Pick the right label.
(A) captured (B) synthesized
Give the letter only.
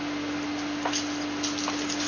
A